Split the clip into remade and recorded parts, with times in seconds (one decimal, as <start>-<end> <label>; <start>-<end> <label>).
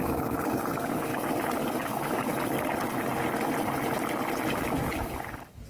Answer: 0.0-1.1 remade; 1.1-1.7 recorded; 1.7-2.3 remade; 2.3-4.5 recorded; 4.5-5.7 remade